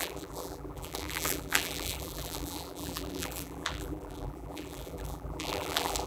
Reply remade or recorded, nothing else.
remade